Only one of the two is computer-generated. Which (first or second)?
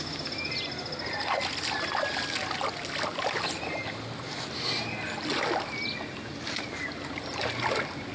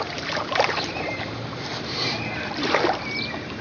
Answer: second